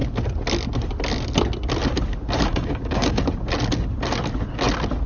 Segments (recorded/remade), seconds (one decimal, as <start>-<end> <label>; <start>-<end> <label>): 0.0-2.5 recorded; 2.5-3.2 remade; 3.2-5.1 recorded